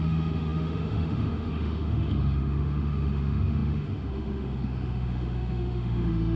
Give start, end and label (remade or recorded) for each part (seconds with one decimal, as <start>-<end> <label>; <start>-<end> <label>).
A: 0.0-6.4 remade

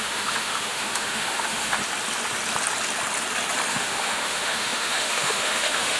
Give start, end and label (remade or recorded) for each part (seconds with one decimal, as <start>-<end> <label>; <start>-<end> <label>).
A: 0.0-1.8 remade; 1.8-3.7 recorded; 3.7-6.0 remade

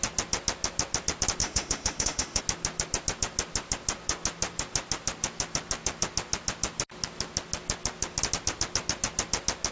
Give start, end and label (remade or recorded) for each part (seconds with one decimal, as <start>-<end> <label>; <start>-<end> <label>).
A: 0.0-1.4 recorded; 1.4-2.4 remade; 2.4-9.7 recorded

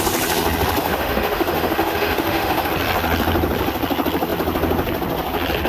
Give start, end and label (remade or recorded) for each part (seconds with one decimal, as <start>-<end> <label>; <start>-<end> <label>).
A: 0.0-0.8 recorded; 0.8-2.7 remade; 2.7-5.7 recorded

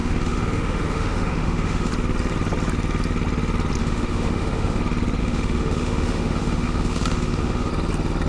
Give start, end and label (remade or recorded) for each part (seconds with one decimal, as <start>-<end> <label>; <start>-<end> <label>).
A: 0.0-1.9 remade; 1.9-3.8 recorded; 3.8-4.8 remade; 4.8-5.2 recorded; 5.2-7.7 remade; 7.7-8.3 recorded

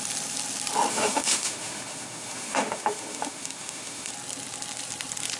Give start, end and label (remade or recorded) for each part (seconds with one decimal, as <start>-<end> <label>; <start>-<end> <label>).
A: 0.0-0.9 recorded; 0.9-4.1 remade; 4.1-5.4 recorded

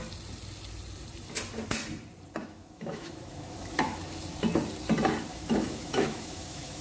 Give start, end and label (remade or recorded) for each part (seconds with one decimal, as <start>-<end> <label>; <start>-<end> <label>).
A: 0.0-2.4 recorded; 2.4-4.0 remade; 4.0-5.3 recorded; 5.3-6.8 remade

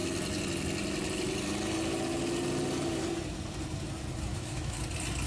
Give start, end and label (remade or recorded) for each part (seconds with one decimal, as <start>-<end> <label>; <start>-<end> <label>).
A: 0.0-4.3 recorded; 4.3-4.8 remade; 4.8-5.3 recorded